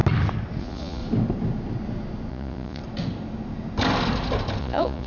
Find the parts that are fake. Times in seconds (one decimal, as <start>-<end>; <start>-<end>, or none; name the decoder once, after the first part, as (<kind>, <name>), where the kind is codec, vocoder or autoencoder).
0.6-1.0 (vocoder, Vocos); 2.3-2.8; 4.6-5.1